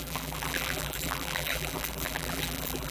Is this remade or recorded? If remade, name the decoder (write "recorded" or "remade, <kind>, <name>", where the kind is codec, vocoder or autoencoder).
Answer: remade, vocoder, BigVGAN v2